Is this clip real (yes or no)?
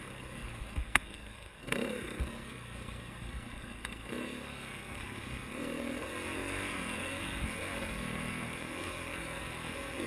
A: no